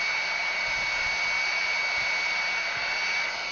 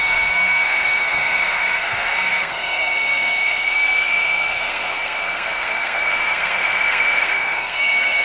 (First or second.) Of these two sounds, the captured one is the first